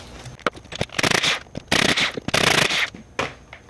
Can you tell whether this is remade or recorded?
recorded